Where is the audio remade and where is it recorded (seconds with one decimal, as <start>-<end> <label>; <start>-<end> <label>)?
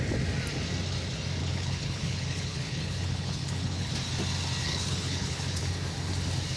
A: 0.0-1.4 recorded; 1.4-3.9 remade; 3.9-4.6 recorded; 4.6-5.6 remade; 5.6-6.6 recorded